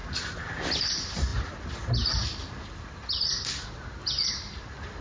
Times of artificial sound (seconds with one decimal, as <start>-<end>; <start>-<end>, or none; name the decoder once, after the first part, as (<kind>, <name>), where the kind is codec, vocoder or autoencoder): none